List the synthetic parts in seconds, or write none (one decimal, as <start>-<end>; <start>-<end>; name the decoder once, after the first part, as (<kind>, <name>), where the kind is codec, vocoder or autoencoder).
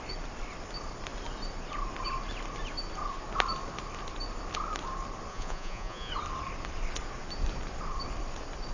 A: 5.3-6.1 (vocoder, Vocos)